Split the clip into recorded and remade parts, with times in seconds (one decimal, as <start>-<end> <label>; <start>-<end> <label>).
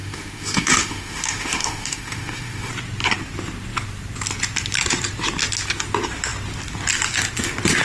0.0-2.7 remade; 2.7-7.8 recorded